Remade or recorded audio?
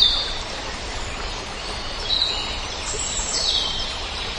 remade